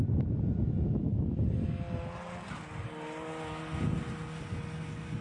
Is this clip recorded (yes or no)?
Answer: yes